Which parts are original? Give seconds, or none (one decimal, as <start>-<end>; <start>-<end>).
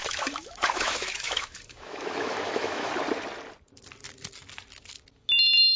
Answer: 2.9-5.8